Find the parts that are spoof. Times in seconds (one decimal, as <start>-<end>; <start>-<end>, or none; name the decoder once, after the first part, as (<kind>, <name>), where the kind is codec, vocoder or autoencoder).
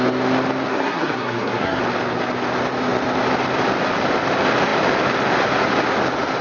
0.7-1.8 (codec, SNAC)